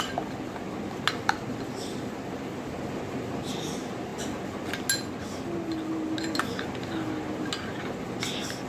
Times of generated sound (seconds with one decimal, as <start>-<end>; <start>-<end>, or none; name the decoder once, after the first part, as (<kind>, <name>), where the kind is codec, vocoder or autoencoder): none